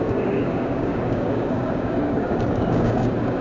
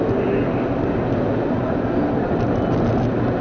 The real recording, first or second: second